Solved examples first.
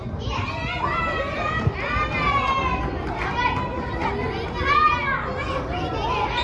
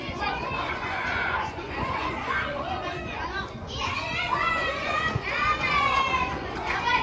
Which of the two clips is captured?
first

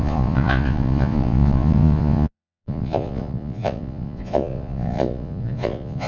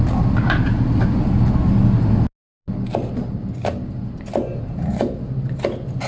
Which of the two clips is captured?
second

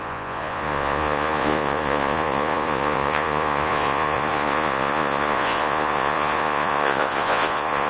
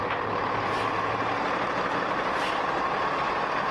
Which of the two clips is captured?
second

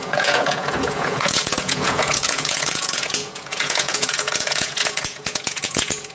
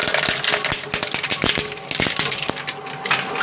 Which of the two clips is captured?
second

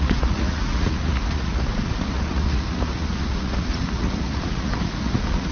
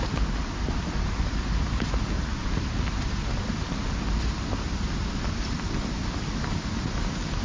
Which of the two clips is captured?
second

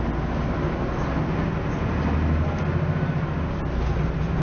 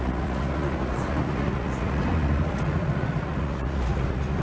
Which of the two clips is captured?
first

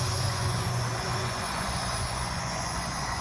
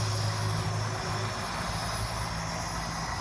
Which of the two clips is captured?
second